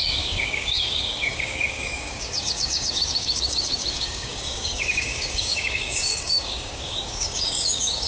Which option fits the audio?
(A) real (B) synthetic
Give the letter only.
B